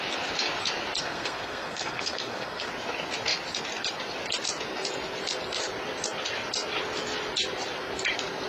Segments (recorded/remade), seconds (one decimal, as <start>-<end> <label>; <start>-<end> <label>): 0.0-1.0 recorded; 1.0-2.7 remade; 2.7-8.5 recorded